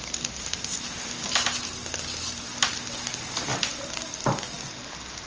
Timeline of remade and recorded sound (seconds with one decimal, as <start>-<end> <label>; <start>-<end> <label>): 0.0-3.7 remade; 3.7-5.3 recorded

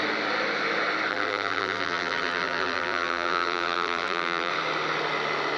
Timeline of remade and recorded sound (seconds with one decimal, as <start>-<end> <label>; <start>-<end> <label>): 0.0-1.1 recorded; 1.1-4.5 remade; 4.5-5.6 recorded

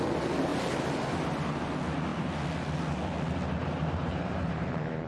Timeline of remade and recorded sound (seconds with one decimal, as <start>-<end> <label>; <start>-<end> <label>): 0.0-0.5 recorded; 0.5-1.5 remade; 1.5-3.6 recorded; 3.6-5.1 remade

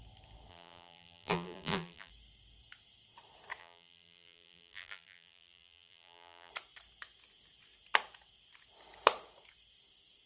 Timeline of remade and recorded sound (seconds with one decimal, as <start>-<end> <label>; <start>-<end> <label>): 0.0-0.5 recorded; 0.5-2.1 remade; 2.1-3.6 recorded; 3.6-6.5 remade; 6.5-10.3 recorded